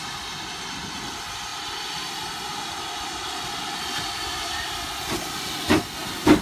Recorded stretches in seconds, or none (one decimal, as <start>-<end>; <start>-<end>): 0.0-6.4